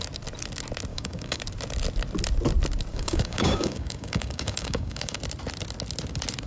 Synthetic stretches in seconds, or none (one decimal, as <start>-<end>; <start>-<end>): 0.9-1.4; 2.9-5.2